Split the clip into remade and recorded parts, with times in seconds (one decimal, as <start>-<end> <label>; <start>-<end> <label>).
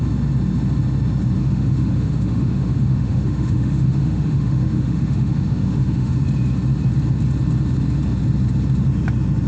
0.0-1.4 recorded; 1.4-6.1 remade; 6.1-9.5 recorded